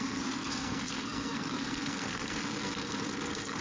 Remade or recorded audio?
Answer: remade